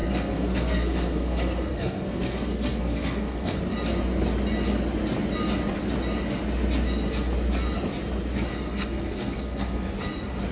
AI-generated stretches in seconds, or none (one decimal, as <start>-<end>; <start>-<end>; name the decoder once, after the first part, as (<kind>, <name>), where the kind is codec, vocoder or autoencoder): 0.0-3.6 (codec, SNAC); 8.5-9.9